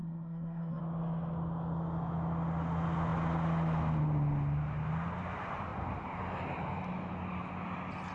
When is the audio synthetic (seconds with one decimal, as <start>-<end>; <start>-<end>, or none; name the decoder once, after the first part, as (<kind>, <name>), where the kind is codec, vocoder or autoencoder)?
0.0-0.8 (codec, SNAC)